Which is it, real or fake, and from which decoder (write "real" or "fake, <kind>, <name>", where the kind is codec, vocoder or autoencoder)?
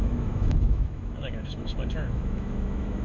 fake, autoencoder, DAC-VAE